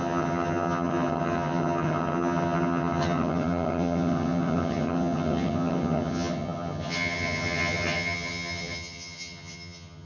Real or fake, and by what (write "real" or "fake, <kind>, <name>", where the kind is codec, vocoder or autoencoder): fake, vocoder, HiFi-GAN